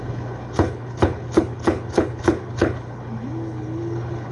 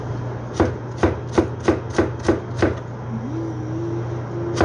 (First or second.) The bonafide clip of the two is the second